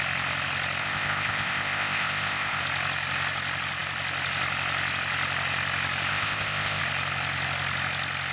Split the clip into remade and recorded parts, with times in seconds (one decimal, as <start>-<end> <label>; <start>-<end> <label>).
0.0-0.8 recorded; 0.8-2.6 remade; 2.6-6.1 recorded; 6.1-6.8 remade; 6.8-8.3 recorded